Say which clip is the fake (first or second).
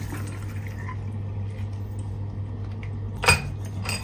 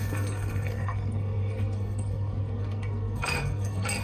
second